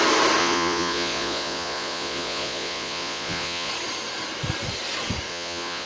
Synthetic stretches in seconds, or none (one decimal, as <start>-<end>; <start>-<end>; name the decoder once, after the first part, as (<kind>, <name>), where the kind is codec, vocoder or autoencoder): 0.4-3.7 (vocoder, Vocos); 5.3-5.9